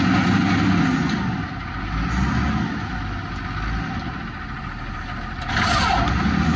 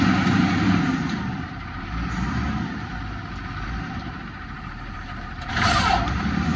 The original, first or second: first